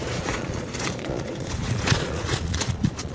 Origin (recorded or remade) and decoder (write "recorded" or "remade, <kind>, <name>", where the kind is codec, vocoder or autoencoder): remade, vocoder, Vocos